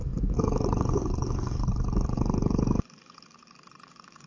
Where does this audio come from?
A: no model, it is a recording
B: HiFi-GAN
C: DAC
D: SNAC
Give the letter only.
C